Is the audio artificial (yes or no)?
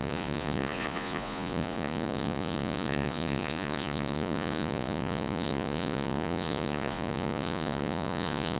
yes